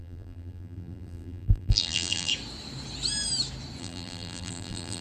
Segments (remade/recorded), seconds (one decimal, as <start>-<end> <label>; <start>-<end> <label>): 0.0-2.3 remade; 2.3-3.8 recorded; 3.8-5.0 remade